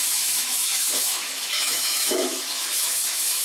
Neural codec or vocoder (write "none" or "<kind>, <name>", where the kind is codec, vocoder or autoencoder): autoencoder, DAC-VAE